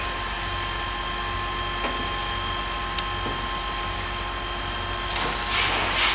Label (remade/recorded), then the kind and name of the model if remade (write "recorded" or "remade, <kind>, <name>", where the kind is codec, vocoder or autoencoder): recorded